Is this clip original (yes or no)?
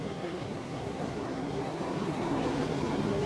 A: no